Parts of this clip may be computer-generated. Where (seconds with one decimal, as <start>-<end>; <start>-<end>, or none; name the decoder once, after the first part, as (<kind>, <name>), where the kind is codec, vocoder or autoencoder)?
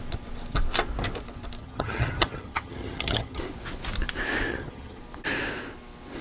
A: 1.6-3.4 (vocoder, HiFi-GAN); 4.5-5.0